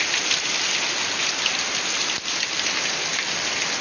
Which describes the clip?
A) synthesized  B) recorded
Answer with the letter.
B